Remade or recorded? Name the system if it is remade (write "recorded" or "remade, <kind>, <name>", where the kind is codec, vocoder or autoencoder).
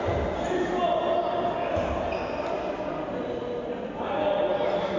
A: recorded